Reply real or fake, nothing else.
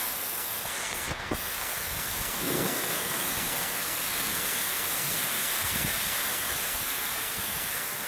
fake